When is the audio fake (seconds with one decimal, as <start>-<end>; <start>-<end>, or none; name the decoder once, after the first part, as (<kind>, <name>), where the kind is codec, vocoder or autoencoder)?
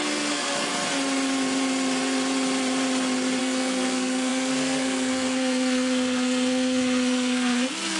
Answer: 0.0-0.7 (codec, SNAC); 3.4-8.0